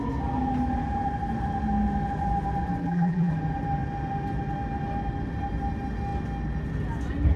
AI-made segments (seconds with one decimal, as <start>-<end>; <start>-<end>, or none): 2.8-3.3